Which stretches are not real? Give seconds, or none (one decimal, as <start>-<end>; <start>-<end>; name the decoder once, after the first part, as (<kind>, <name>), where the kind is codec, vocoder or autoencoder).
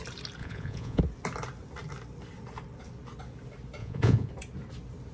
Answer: 0.4-1.0 (vocoder, Vocos); 3.8-4.3